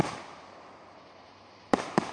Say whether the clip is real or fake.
real